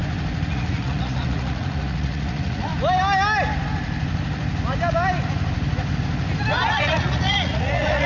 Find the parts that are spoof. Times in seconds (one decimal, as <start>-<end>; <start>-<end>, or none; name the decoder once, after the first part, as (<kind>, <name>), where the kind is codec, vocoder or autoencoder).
0.5-2.7 (vocoder, Vocos); 6.7-8.1